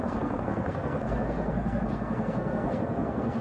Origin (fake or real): fake